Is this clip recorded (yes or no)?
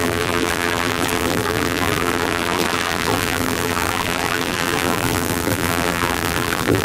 no